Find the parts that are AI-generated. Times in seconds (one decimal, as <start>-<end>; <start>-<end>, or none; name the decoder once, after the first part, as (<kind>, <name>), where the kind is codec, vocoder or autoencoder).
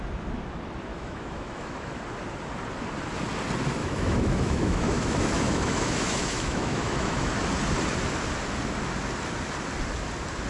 0.9-2.0 (autoencoder, DAC-VAE); 3.8-7.3